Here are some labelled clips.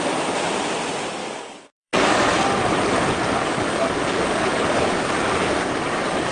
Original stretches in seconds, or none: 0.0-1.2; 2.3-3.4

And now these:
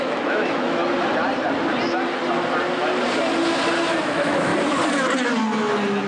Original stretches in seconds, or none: 0.8-4.0; 4.5-6.1

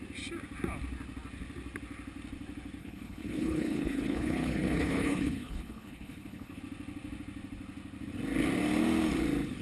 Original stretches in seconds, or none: 0.0-2.8; 6.6-9.6

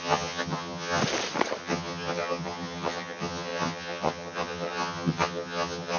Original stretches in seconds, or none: 1.0-1.6

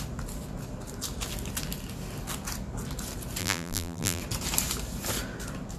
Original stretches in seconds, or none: 0.0-3.4; 4.2-5.8

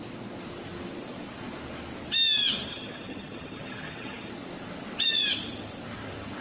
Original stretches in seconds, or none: 0.0-2.7; 4.3-6.4

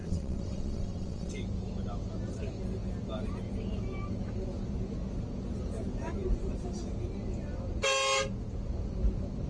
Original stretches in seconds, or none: 1.3-9.5